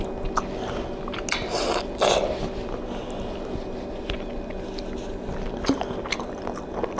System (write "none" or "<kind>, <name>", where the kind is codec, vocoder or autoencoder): none